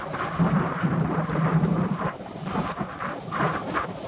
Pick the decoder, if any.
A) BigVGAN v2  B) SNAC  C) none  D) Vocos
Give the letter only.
A